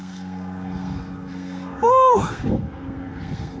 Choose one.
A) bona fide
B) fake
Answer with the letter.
B